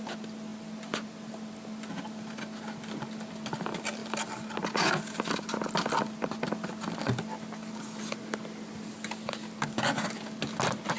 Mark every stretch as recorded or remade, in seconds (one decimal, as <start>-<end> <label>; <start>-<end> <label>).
0.0-11.0 recorded